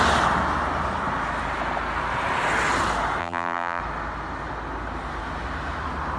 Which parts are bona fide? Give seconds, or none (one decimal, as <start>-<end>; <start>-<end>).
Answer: 0.0-3.2; 3.8-6.2